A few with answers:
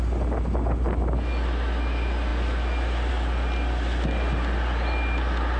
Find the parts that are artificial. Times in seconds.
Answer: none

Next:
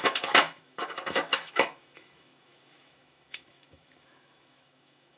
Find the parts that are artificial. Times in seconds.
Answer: 0.0-5.2 (autoencoder, DAC-VAE)

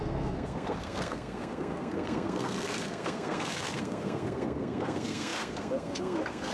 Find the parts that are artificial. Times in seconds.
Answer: 0.0-6.5 (codec, SNAC)

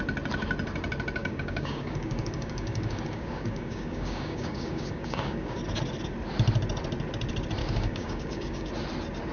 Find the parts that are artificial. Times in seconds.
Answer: 1.2-5.6 (codec, DAC); 7.6-8.7

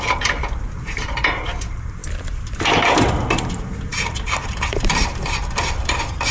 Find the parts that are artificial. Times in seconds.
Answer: 0.0-2.0 (vocoder, BigVGAN v2); 3.5-6.3

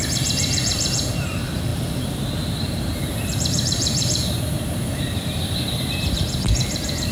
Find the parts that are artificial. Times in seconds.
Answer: 0.0-7.1 (vocoder, BigVGAN v2)

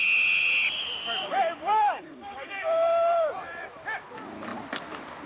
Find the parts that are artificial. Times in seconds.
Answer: 1.2-3.3 (codec, DAC)